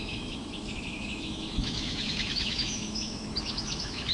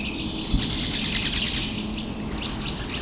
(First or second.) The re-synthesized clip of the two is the first